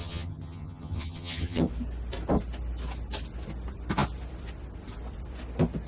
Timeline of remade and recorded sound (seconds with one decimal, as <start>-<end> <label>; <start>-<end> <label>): 0.0-1.7 remade; 1.7-5.9 recorded

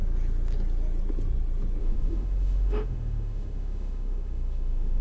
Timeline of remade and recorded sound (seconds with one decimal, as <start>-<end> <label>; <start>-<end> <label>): 0.0-1.8 recorded; 1.8-5.0 remade

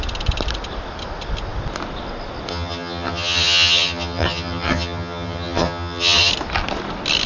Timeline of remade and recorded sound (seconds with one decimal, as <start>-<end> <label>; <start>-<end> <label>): 0.0-2.5 recorded; 2.5-6.3 remade; 6.3-7.3 recorded

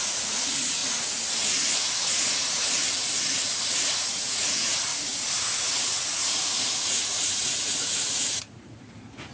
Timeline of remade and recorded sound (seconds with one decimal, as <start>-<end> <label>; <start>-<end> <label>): 0.0-0.8 remade; 0.8-2.0 recorded; 2.0-2.8 remade; 2.8-3.8 recorded; 3.8-9.3 remade

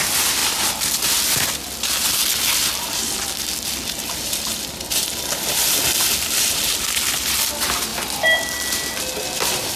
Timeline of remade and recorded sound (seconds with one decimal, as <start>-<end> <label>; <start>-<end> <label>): 0.0-2.2 recorded; 2.2-6.8 remade; 6.8-9.8 recorded

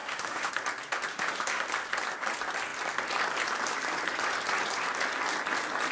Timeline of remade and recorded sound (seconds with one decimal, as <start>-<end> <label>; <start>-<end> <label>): 0.0-0.5 remade; 0.5-1.1 recorded; 1.1-1.6 remade; 1.6-5.9 recorded

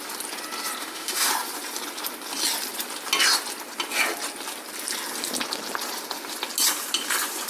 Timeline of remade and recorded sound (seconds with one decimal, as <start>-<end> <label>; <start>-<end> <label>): 0.0-0.8 recorded; 0.8-1.3 remade; 1.3-7.5 recorded